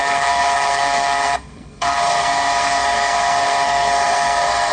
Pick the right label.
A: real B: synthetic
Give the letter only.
B